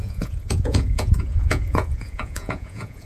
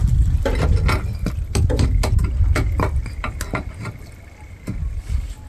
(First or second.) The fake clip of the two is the first